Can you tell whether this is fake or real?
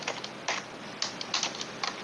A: real